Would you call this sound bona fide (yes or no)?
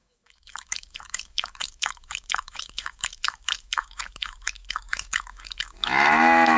no